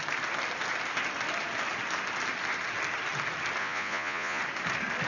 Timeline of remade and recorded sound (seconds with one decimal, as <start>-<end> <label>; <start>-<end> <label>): 0.0-3.6 recorded; 3.6-4.4 remade; 4.4-5.1 recorded